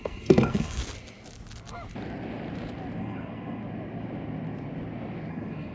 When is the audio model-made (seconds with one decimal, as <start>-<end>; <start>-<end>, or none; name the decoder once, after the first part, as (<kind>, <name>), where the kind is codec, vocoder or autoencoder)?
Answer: 0.0-0.8 (codec, SNAC); 3.0-3.6; 5.3-5.7